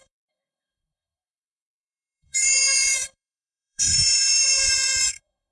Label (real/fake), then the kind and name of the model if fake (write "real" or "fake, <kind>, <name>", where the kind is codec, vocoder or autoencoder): fake, autoencoder, DAC-VAE